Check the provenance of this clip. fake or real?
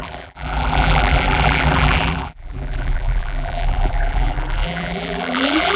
fake